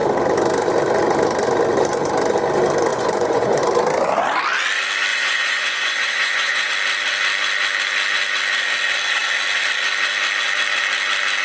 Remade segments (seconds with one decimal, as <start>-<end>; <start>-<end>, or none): 2.9-3.6; 5.1-6.7